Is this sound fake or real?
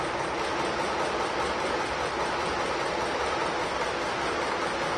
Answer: real